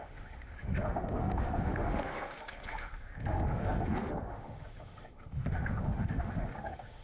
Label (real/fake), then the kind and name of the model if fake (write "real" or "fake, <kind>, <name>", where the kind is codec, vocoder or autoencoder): fake, autoencoder, DAC-VAE